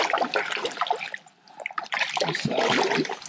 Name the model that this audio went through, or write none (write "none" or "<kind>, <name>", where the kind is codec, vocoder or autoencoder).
none